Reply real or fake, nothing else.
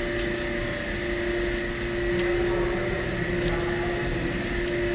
real